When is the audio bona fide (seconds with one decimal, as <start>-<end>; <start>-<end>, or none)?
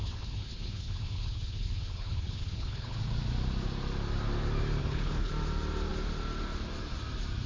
3.0-4.8; 5.3-7.5